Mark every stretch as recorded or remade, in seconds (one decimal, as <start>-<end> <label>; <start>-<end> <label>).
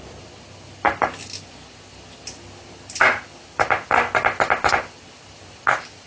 0.0-6.1 recorded